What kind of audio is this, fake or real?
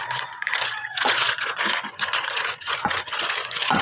fake